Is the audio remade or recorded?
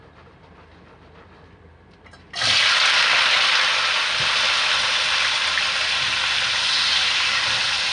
recorded